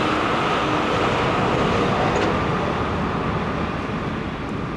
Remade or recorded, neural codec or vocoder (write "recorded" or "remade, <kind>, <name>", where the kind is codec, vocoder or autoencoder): recorded